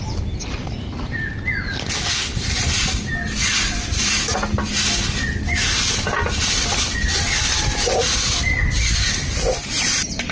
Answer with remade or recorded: recorded